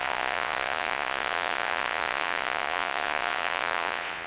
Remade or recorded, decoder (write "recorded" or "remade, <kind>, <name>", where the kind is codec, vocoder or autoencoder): remade, vocoder, Vocos